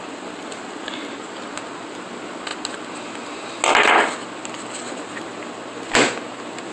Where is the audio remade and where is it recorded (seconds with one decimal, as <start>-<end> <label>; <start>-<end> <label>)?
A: 0.0-6.7 recorded